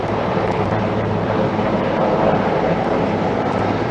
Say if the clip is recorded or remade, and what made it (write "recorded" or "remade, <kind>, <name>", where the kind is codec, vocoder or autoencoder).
remade, vocoder, BigVGAN v2